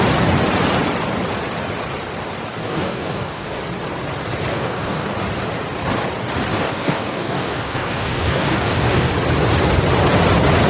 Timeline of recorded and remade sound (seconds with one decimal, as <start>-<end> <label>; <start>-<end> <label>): 0.0-2.6 recorded; 2.6-3.6 remade; 3.6-4.5 recorded; 4.5-5.1 remade; 5.1-6.5 recorded; 6.5-9.1 remade; 9.1-10.7 recorded